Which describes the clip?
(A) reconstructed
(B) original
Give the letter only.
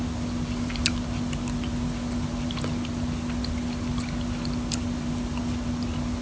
B